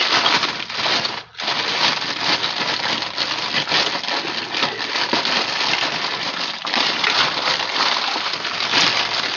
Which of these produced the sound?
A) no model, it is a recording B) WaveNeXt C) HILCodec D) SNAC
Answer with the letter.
A